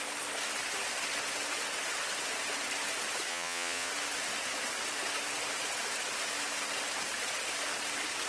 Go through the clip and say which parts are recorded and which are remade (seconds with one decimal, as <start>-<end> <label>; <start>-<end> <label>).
0.0-3.3 recorded; 3.3-3.9 remade; 3.9-8.3 recorded